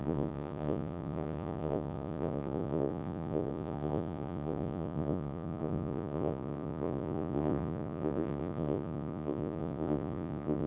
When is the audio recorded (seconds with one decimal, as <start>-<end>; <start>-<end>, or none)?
none